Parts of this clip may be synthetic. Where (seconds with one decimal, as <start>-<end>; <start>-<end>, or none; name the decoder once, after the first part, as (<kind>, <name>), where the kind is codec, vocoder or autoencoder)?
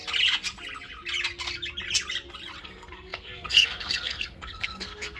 2.6-5.2 (codec, SNAC)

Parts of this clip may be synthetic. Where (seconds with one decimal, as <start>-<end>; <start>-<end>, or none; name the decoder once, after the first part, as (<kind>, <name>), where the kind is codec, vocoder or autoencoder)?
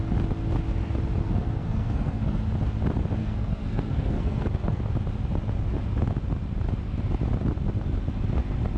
1.2-2.4 (codec, SNAC); 3.2-4.8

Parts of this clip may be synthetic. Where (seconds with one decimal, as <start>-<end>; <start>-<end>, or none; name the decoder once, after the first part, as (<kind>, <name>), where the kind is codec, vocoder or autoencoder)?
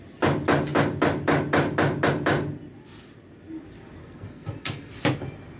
4.0-4.9 (codec, SNAC)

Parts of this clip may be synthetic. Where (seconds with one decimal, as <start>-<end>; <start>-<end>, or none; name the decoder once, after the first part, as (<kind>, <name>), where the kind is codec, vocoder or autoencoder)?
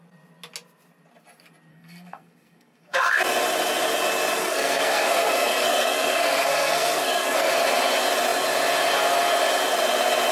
1.7-3.2 (codec, SNAC); 4.4-7.5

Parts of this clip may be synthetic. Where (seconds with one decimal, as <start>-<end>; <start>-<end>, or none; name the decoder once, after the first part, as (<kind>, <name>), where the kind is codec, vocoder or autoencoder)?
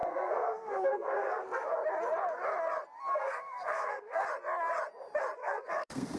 0.0-1.7 (codec, SNAC); 3.1-4.2; 5.4-6.2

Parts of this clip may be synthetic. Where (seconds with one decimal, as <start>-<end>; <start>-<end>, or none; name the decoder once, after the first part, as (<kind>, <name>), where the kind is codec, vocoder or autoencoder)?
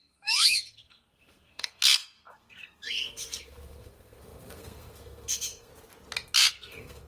0.0-5.7 (codec, SNAC); 6.5-7.1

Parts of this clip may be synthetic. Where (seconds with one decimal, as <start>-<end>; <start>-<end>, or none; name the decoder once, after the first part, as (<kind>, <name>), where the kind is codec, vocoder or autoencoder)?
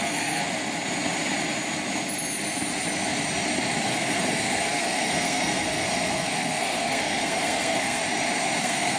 0.0-0.4 (codec, SNAC); 3.8-8.0; 8.6-9.0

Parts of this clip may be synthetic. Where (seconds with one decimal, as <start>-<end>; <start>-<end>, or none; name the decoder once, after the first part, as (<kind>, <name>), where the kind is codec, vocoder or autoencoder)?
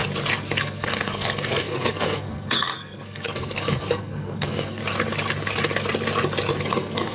0.6-4.8 (codec, SNAC); 6.6-7.1